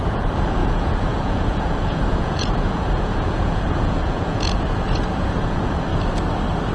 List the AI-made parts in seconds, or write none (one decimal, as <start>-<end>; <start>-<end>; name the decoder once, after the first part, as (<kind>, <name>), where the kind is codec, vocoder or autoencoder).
0.0-5.9 (vocoder, Vocos)